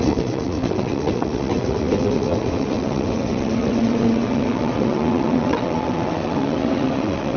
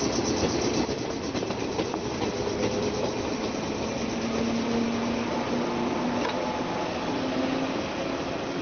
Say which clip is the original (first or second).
second